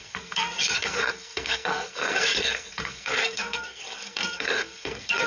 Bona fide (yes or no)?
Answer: no